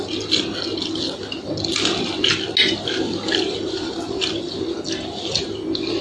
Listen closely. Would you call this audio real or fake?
real